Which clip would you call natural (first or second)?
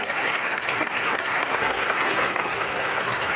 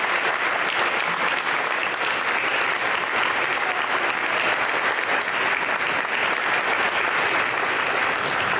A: second